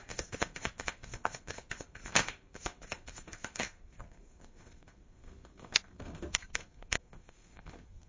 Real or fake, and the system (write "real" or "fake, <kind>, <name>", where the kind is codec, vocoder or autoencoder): fake, codec, SNAC